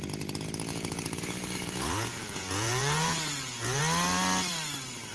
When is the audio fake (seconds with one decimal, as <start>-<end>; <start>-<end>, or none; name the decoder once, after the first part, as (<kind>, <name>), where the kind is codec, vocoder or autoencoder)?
0.7-3.8 (vocoder, Vocos)